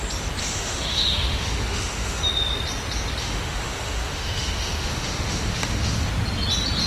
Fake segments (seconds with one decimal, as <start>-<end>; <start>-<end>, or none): 0.4-2.2; 3.2-6.1